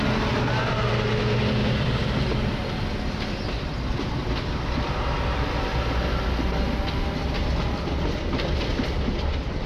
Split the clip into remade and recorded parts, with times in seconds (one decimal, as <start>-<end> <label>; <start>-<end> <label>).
0.0-1.6 recorded; 1.6-4.5 remade; 4.5-8.7 recorded; 8.7-9.7 remade